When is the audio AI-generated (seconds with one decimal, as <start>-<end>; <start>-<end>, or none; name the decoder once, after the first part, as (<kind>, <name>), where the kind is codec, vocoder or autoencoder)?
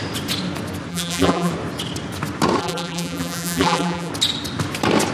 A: 0.9-1.5 (vocoder, BigVGAN v2); 2.6-4.1